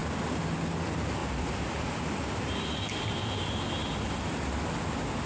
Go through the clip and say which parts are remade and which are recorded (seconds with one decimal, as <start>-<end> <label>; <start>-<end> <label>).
0.0-0.6 remade; 0.6-1.2 recorded; 1.2-3.2 remade; 3.2-5.3 recorded